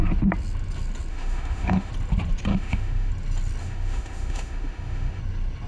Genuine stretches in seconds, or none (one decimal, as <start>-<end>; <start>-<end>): 0.0-1.1; 1.9-2.5; 3.1-3.6; 5.2-5.7

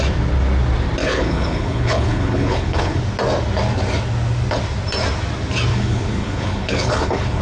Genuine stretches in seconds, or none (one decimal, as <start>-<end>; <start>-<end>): 0.0-1.0; 3.0-5.7

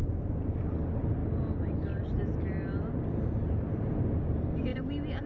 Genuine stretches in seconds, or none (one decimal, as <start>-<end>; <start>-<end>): 0.0-5.3

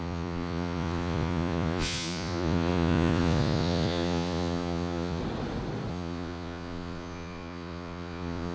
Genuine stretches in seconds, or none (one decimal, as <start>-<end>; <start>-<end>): 5.2-5.9

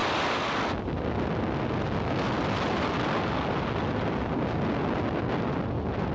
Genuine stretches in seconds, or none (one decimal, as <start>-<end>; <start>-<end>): 0.0-6.1

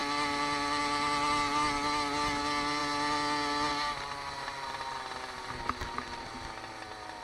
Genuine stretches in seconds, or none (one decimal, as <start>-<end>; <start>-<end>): 0.0-7.2

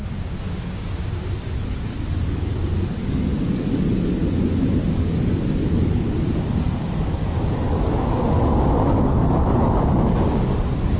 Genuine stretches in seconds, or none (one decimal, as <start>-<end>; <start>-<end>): 0.0-1.3; 4.2-4.9

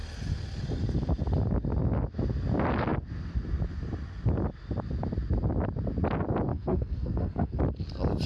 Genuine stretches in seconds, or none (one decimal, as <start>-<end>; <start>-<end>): 0.0-6.5; 7.6-8.3